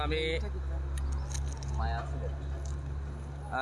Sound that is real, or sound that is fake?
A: real